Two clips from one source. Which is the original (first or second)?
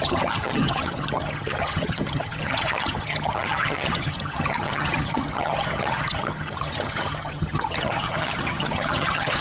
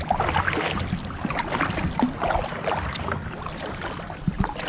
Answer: second